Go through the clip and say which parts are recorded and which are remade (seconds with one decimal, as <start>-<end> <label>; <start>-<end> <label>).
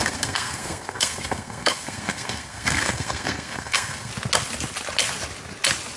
0.0-4.1 remade; 4.1-6.0 recorded